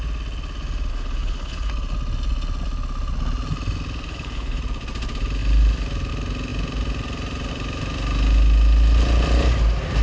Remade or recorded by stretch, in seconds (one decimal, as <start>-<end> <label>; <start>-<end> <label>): 0.0-0.9 recorded; 0.9-1.7 remade; 1.7-4.1 recorded; 4.1-4.6 remade; 4.6-10.0 recorded